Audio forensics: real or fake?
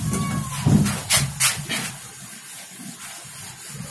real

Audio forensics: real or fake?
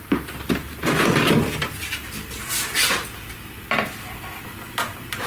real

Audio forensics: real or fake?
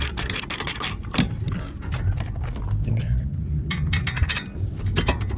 fake